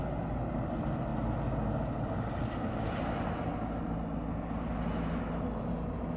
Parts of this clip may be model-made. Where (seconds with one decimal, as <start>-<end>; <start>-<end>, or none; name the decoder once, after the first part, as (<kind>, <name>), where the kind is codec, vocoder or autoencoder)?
none